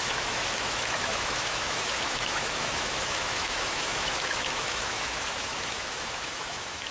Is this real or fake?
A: fake